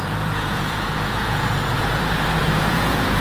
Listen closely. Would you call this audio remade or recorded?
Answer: remade